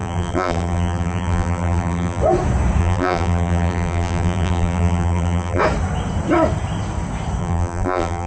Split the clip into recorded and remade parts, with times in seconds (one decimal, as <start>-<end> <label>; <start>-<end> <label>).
0.0-2.2 remade; 2.2-2.8 recorded; 2.8-5.6 remade; 5.6-7.4 recorded; 7.4-8.3 remade